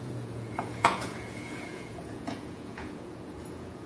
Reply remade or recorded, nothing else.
remade